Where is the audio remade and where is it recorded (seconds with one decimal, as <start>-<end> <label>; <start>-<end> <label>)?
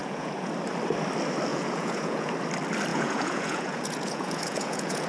0.0-0.5 remade; 0.5-1.5 recorded; 1.5-2.3 remade; 2.3-2.9 recorded; 2.9-5.1 remade